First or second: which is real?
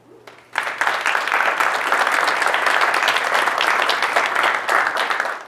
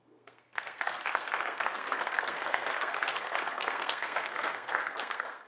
first